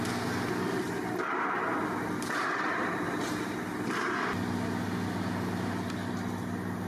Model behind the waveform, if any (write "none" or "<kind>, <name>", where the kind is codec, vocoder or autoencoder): none